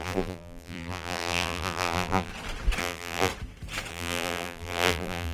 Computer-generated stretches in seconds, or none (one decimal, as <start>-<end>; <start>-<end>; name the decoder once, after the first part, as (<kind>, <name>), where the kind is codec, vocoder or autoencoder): 0.0-2.3 (vocoder, BigVGAN v2); 2.8-3.3; 3.9-5.3